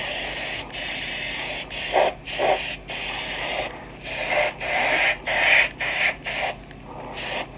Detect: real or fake real